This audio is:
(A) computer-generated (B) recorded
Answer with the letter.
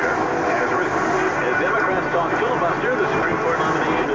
B